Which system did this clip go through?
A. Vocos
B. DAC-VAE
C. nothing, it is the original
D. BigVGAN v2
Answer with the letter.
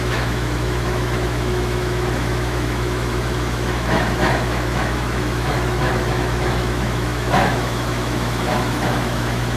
B